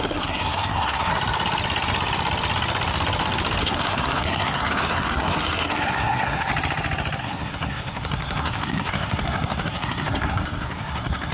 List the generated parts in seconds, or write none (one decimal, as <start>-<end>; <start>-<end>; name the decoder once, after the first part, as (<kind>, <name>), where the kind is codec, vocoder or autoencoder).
0.0-1.1 (codec, SNAC); 3.6-6.5; 7.2-11.3